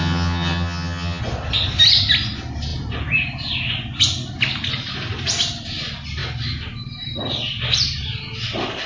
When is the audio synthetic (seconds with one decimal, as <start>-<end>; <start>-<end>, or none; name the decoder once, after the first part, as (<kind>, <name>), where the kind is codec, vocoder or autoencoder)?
0.0-1.2 (vocoder, HiFi-GAN)